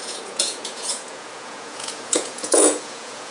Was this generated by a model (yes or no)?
yes